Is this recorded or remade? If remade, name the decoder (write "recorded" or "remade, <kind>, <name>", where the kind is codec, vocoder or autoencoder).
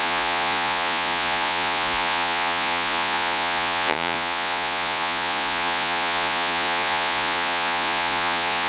remade, vocoder, Vocos